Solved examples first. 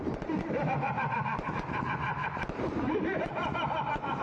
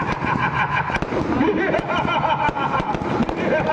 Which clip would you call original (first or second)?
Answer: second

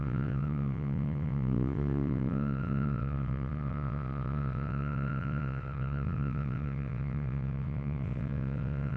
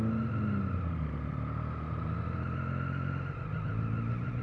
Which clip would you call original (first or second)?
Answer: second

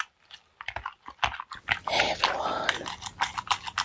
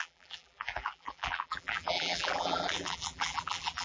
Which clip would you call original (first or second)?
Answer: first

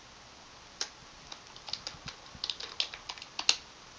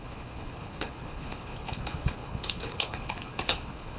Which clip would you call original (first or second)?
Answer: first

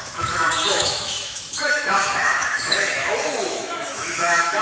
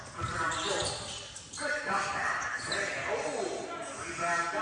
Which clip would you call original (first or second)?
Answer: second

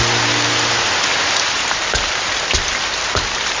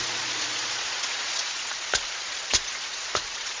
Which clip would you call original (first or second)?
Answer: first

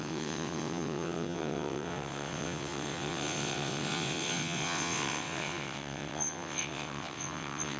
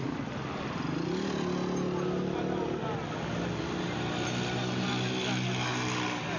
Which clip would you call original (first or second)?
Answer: second